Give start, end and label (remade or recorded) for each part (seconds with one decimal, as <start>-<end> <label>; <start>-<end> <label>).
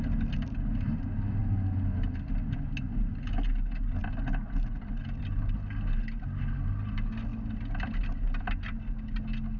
0.0-9.6 recorded